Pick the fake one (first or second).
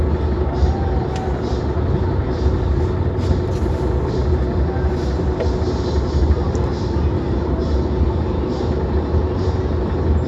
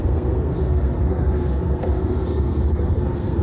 second